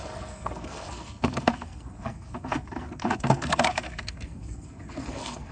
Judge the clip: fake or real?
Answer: fake